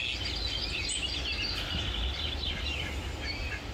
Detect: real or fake real